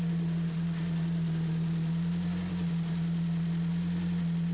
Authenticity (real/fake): real